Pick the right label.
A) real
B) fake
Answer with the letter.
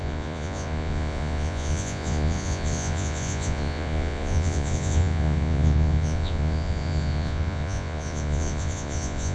B